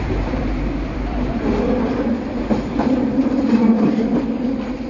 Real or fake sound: fake